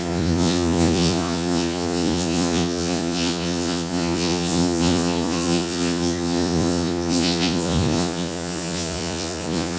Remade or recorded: remade